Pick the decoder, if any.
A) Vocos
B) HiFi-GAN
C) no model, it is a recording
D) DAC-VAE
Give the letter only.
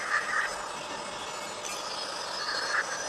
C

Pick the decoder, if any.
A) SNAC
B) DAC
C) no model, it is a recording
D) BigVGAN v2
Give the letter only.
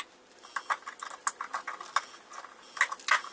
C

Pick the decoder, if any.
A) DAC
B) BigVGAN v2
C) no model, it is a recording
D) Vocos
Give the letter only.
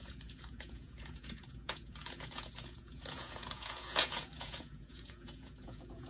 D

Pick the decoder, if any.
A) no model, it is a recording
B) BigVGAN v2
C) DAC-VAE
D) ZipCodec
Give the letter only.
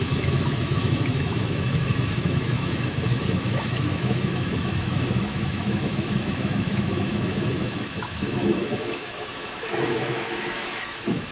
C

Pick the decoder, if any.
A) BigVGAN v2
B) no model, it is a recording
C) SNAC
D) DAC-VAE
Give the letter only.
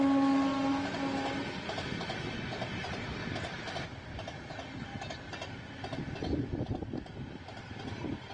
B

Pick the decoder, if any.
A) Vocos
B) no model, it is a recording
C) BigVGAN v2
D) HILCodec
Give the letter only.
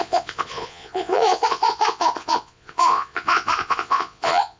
A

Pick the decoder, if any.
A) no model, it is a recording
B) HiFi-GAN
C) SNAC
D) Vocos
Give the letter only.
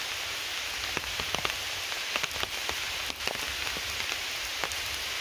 A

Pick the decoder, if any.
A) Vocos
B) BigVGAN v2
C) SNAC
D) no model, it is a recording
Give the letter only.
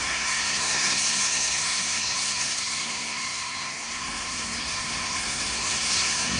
C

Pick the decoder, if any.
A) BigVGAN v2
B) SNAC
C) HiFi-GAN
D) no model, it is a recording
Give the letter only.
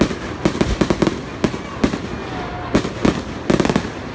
D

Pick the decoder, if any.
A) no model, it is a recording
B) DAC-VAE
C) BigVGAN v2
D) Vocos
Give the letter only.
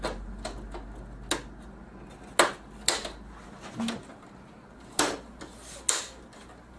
A